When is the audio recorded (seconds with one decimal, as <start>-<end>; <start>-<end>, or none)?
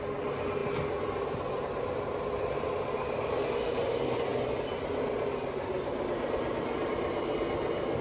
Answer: 0.0-8.0